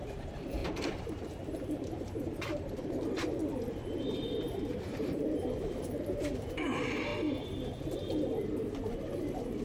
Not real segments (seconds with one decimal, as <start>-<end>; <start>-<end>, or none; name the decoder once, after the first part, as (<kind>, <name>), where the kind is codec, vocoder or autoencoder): 0.0-3.4 (vocoder, BigVGAN v2); 4.0-7.1; 9.1-9.6